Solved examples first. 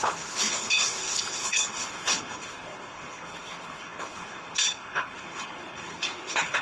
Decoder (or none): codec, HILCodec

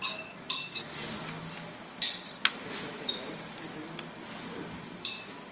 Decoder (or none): none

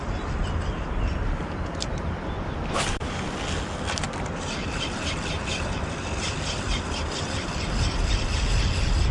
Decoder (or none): none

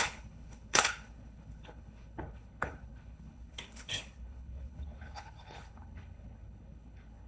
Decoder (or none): codec, HILCodec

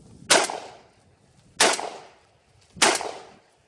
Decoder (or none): none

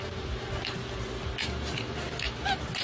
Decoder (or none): none